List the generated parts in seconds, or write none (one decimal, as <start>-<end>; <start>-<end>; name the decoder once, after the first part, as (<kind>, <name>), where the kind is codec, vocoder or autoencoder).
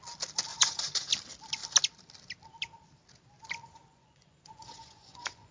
0.5-1.1 (vocoder, Vocos); 3.7-5.5